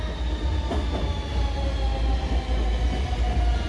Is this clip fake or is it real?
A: real